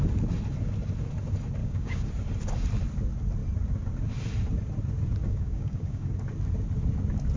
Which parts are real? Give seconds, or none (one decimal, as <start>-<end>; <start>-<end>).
0.0-1.6; 2.1-5.2; 6.2-7.4